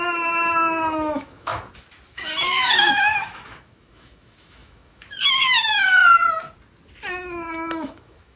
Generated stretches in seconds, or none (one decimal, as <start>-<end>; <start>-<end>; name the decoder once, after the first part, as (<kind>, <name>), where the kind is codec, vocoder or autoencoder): 0.0-1.5 (autoencoder, DAC-VAE); 2.1-6.0; 7.1-8.4